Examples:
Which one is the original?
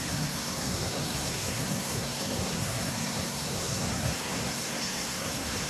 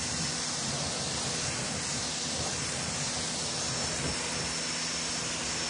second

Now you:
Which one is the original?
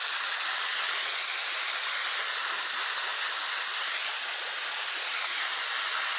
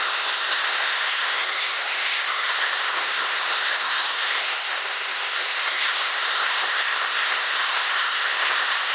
first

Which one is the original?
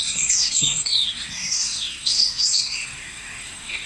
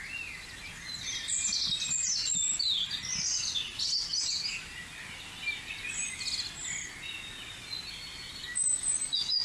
second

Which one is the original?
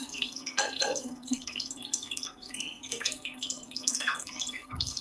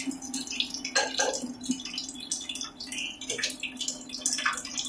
second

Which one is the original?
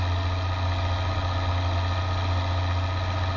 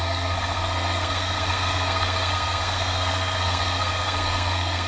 first